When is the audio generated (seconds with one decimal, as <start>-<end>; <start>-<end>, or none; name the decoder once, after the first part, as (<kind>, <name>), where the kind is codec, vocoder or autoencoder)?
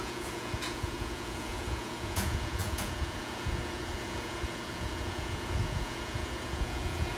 0.0-7.2 (vocoder, Vocos)